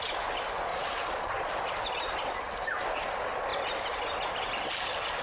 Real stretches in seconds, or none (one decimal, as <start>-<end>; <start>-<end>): 0.0-0.7; 1.5-5.2